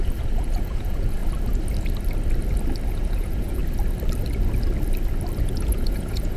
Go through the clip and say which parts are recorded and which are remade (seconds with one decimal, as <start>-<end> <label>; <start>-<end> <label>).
0.0-1.2 remade; 1.2-2.9 recorded; 2.9-3.6 remade; 3.6-5.4 recorded; 5.4-6.4 remade